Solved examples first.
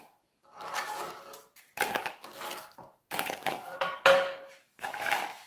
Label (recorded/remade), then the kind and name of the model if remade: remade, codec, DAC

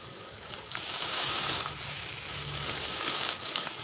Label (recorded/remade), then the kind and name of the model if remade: remade, codec, DAC